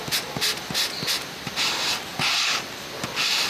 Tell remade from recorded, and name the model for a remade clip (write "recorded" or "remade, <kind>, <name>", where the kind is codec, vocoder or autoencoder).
recorded